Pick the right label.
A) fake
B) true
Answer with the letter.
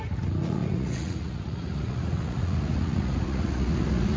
A